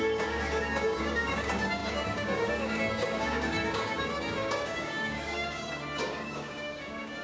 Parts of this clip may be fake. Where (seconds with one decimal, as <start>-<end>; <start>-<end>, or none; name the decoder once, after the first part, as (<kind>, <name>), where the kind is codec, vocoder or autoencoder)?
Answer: 0.0-7.2 (codec, DAC)